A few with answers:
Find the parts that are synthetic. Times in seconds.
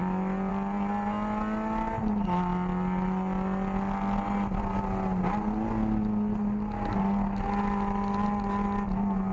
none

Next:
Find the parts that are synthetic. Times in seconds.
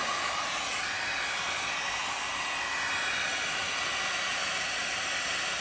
none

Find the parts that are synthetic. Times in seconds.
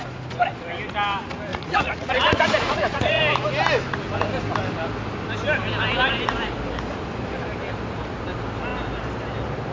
1.5-3.2 (vocoder, Vocos)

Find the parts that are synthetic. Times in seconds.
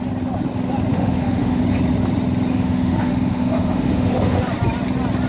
0.9-1.6 (autoencoder, DAC-VAE); 2.5-4.4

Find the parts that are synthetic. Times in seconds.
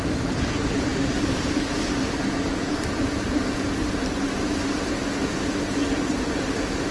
0.0-6.9 (vocoder, BigVGAN v2)